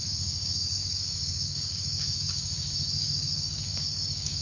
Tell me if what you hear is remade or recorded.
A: remade